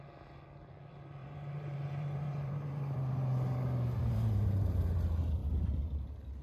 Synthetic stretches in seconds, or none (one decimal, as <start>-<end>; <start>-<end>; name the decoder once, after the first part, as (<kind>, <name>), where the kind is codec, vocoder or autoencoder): 1.2-4.9 (vocoder, BigVGAN v2)

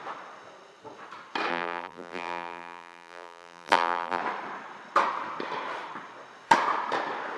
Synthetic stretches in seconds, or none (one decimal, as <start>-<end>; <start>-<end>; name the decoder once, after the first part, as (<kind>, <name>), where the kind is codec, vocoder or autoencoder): 1.5-4.2 (vocoder, BigVGAN v2)